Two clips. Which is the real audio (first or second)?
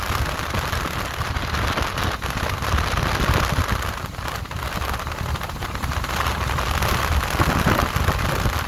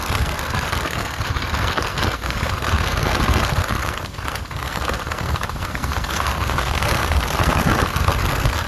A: first